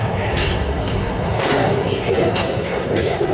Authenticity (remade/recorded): remade